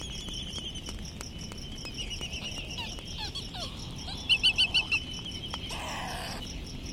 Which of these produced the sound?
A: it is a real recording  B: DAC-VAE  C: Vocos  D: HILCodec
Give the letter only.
A